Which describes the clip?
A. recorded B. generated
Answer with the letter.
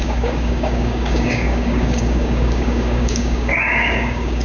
B